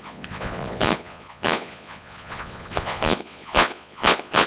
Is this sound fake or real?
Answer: fake